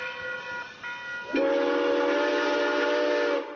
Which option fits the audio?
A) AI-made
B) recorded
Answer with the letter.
B